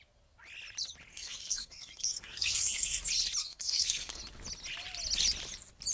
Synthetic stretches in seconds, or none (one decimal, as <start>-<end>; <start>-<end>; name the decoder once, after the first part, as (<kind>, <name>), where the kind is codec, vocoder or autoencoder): 1.1-3.0 (codec, SNAC); 3.4-4.2